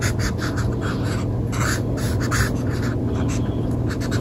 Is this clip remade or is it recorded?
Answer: recorded